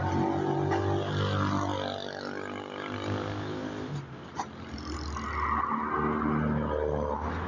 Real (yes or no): yes